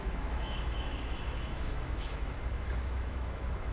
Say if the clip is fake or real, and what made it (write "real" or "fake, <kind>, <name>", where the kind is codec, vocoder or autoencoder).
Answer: fake, autoencoder, DAC-VAE